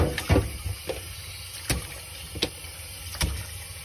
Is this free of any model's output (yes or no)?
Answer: yes